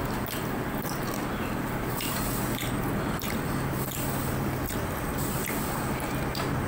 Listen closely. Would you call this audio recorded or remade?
recorded